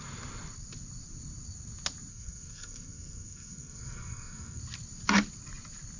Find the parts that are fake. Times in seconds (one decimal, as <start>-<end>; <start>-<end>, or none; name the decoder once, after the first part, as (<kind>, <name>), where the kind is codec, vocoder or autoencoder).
2.1-4.6 (codec, SNAC)